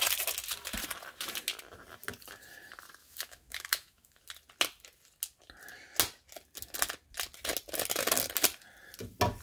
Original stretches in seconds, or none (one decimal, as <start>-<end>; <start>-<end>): 0.0-3.0; 4.2-9.4